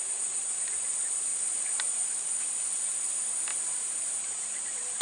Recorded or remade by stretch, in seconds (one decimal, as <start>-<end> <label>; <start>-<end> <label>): 0.0-1.3 recorded; 1.3-2.8 remade; 2.8-3.5 recorded; 3.5-5.0 remade